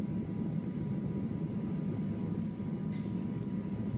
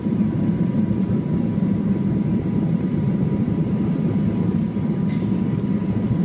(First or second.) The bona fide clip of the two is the first